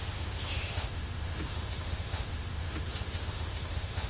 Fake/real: fake